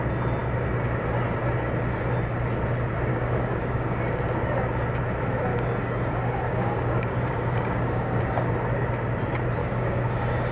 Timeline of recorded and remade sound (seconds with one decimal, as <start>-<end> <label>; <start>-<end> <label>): 0.0-3.1 recorded; 3.1-4.0 remade; 4.0-5.5 recorded; 5.5-8.2 remade; 8.2-9.6 recorded; 9.6-10.5 remade